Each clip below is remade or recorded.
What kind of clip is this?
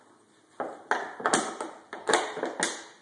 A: recorded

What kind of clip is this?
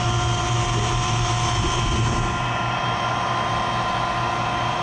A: remade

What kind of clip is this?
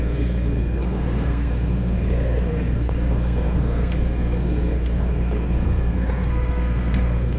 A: remade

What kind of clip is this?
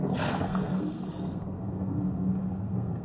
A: remade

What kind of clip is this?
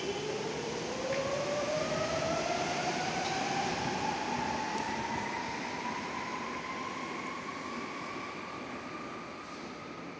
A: recorded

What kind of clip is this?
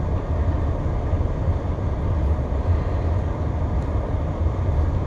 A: recorded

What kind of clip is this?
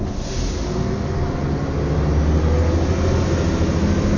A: recorded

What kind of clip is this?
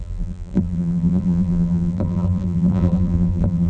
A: remade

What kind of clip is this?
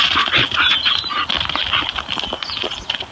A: recorded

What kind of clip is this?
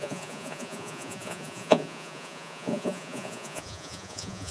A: remade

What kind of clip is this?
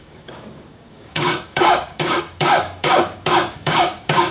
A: remade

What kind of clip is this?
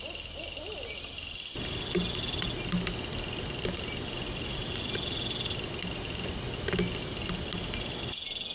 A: recorded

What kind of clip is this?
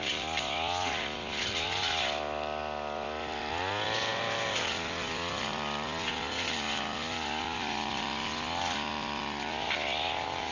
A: recorded